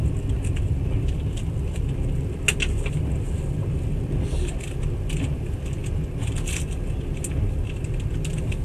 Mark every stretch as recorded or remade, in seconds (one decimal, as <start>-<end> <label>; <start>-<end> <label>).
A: 0.0-8.6 recorded